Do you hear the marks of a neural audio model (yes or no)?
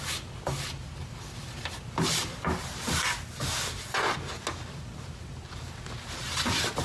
no